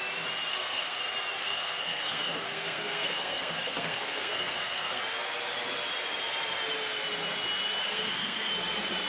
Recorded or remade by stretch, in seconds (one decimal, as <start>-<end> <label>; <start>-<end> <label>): 0.0-0.5 recorded; 0.5-1.0 remade; 1.0-1.4 recorded; 1.4-5.0 remade; 5.0-7.8 recorded; 7.8-8.5 remade; 8.5-9.1 recorded